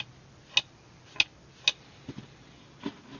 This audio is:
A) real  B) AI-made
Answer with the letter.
A